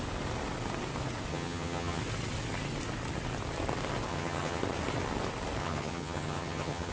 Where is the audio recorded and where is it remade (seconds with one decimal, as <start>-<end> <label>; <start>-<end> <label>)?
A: 0.0-1.3 recorded; 1.3-2.0 remade; 2.0-4.1 recorded; 4.1-4.6 remade; 4.6-5.6 recorded; 5.6-6.9 remade